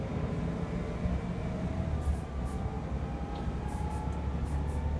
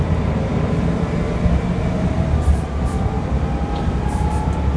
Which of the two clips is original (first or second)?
first